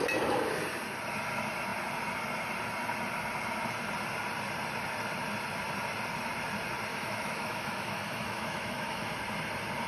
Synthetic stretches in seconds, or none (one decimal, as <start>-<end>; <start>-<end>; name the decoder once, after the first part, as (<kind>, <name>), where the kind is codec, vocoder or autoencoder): 6.9-9.1 (autoencoder, DAC-VAE)